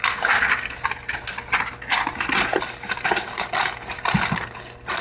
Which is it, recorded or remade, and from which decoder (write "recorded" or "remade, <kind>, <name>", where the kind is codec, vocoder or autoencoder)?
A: recorded